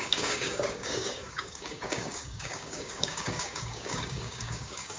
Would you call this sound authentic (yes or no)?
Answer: no